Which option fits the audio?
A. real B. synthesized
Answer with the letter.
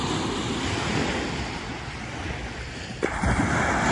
A